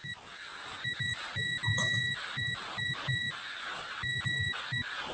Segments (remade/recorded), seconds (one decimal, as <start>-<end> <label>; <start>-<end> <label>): 0.0-5.1 recorded